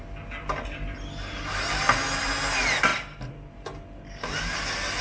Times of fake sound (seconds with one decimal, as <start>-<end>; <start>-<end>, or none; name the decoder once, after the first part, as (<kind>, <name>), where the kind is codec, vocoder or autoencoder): none